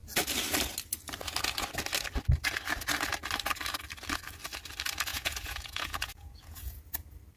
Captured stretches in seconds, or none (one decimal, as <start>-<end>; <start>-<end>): 0.0-5.1; 6.8-7.4